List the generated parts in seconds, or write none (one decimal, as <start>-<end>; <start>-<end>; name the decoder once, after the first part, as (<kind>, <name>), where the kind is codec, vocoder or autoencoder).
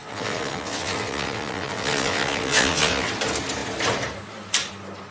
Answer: 0.0-3.1 (vocoder, WaveNeXt)